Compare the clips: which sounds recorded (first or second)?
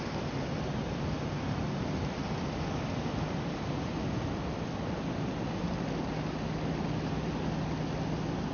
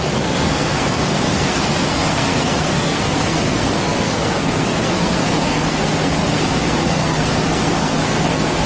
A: first